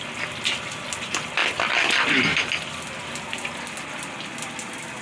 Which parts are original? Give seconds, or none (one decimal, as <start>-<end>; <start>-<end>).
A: 0.0-5.0